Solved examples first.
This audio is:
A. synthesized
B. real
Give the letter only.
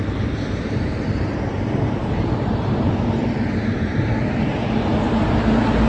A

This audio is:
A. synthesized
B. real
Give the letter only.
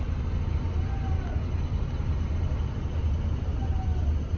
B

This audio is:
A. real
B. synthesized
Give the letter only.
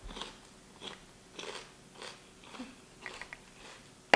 A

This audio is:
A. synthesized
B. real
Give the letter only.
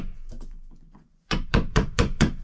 A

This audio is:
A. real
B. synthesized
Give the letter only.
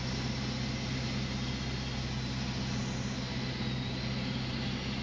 A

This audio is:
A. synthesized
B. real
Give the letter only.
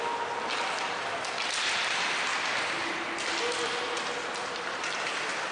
B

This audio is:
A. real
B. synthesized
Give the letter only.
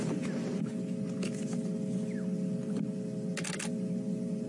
A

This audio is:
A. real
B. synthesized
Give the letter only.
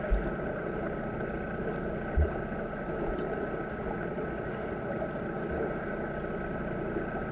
A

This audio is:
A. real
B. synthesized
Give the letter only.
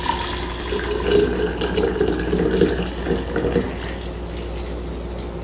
A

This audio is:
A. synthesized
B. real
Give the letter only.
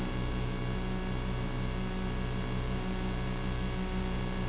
B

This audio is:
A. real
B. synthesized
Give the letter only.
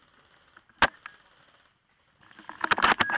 A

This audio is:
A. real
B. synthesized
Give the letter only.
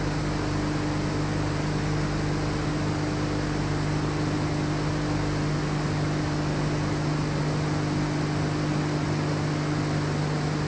A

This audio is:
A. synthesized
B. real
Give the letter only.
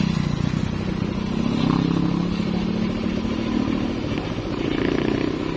B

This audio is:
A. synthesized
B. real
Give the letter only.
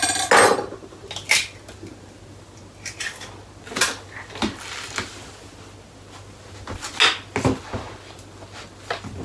B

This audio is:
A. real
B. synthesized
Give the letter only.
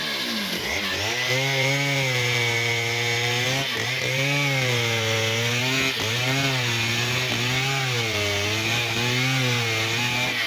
A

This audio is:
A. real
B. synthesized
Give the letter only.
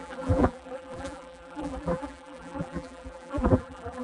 B